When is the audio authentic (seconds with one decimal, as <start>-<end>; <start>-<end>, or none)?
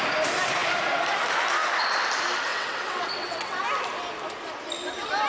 0.0-2.5; 3.6-5.3